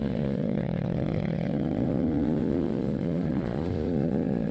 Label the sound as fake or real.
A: fake